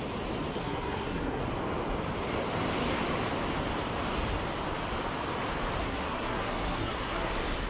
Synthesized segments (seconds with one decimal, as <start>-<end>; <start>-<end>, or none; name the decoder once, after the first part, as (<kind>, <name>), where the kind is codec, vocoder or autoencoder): 0.5-1.4 (codec, SNAC); 5.8-7.3